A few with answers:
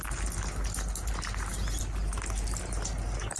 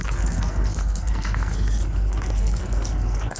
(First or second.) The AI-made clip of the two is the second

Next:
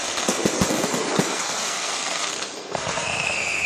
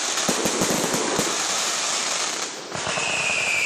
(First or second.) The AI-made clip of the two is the first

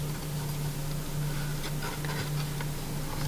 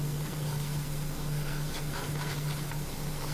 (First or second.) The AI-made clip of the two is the second